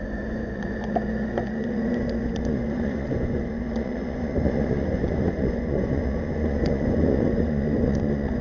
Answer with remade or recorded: remade